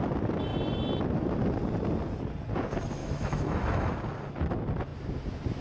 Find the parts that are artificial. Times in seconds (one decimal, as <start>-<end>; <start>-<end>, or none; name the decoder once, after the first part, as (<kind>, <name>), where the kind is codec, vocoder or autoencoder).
3.0-3.9 (autoencoder, DAC-VAE)